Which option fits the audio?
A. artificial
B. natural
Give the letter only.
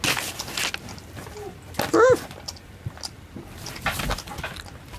B